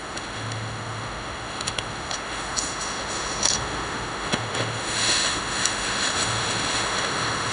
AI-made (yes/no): yes